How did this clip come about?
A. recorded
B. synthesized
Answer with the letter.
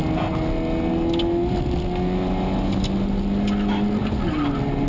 A